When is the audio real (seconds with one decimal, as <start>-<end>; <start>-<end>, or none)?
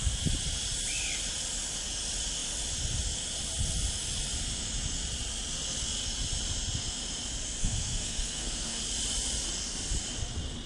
0.0-7.6; 8.8-10.7